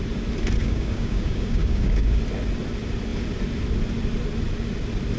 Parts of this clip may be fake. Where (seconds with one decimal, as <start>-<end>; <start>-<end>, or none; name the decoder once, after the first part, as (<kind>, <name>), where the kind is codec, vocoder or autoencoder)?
0.6-2.2 (codec, DAC)

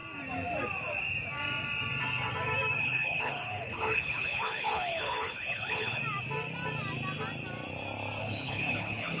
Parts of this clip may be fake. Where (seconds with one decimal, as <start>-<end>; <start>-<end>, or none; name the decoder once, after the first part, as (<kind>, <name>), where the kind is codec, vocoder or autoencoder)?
2.8-6.0 (codec, HILCodec); 8.2-9.2

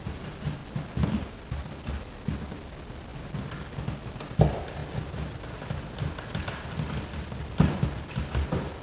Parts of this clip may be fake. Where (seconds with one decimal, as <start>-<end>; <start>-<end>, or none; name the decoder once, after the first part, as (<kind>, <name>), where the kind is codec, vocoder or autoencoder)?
none

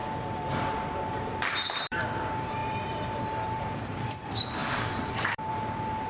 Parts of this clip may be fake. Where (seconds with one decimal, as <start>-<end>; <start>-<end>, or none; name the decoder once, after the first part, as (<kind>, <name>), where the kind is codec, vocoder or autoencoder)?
1.1-6.1 (vocoder, BigVGAN v2)